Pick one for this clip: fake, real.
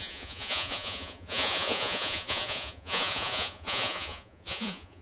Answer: fake